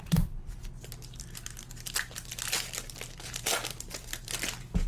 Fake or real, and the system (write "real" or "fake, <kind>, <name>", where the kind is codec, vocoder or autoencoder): real